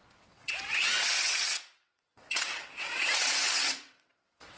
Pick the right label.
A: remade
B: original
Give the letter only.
A